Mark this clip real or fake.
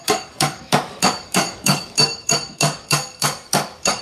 fake